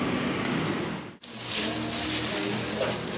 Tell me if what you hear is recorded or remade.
recorded